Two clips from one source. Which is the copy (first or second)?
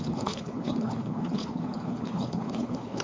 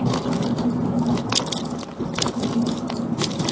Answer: first